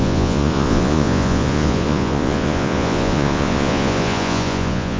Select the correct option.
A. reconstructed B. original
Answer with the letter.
A